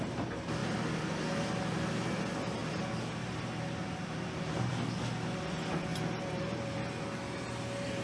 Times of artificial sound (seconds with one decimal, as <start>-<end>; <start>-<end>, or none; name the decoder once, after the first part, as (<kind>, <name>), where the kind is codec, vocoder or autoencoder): none